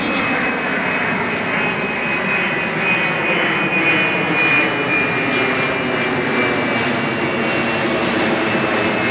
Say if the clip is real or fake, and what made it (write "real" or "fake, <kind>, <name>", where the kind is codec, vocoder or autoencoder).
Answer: real